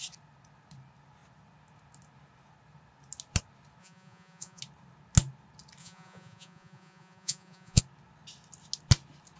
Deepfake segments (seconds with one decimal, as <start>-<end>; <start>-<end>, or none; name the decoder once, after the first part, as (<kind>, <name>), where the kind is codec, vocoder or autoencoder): 3.8-4.6 (vocoder, Vocos); 5.8-7.8